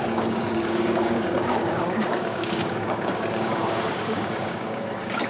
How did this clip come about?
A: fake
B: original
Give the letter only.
A